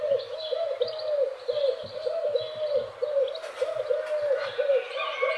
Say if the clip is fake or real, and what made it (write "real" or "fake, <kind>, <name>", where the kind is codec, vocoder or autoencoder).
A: fake, vocoder, BigVGAN v2